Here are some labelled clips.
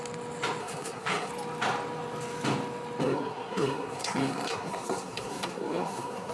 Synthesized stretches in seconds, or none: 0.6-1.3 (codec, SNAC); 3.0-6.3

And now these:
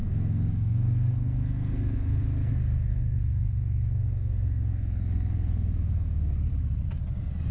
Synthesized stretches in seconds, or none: 0.0-6.5 (codec, SNAC)